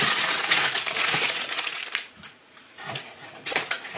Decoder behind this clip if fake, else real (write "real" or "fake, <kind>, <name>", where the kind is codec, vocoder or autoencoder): fake, vocoder, Vocos